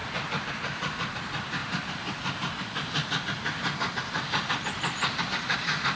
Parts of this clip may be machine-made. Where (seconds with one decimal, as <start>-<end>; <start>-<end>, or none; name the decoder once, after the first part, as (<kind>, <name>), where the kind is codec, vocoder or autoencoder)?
none